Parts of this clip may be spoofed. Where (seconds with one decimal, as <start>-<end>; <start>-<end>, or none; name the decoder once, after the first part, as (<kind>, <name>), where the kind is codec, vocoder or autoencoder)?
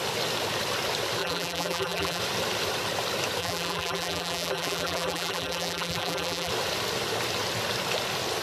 1.2-2.2 (vocoder, BigVGAN v2); 3.4-6.5